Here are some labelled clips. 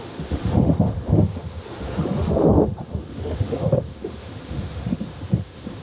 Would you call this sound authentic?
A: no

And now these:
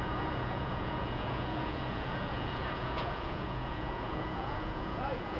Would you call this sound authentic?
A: no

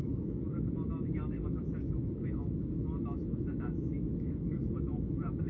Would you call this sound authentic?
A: no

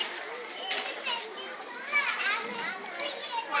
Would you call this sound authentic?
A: no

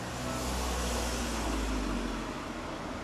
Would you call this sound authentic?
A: yes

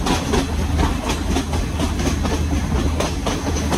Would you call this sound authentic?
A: yes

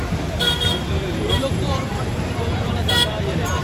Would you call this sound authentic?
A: no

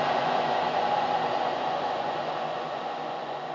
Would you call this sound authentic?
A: no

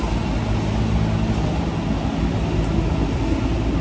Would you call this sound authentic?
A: yes